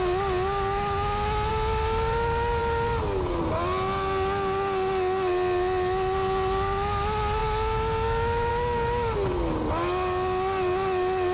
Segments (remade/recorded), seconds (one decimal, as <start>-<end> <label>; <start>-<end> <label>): 0.0-11.3 recorded